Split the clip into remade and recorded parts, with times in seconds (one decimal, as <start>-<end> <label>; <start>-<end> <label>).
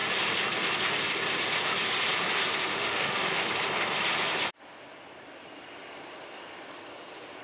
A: 0.0-2.6 recorded; 2.6-3.5 remade; 3.5-7.4 recorded